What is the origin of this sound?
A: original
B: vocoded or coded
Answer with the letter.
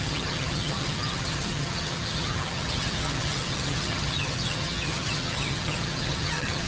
B